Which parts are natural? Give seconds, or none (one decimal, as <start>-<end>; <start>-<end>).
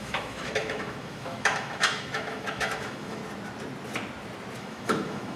3.2-4.6